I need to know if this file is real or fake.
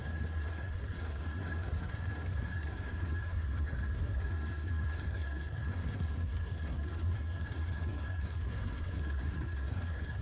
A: fake